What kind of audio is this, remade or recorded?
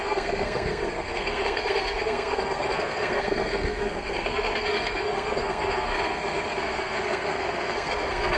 remade